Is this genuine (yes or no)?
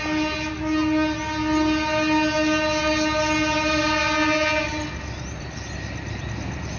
yes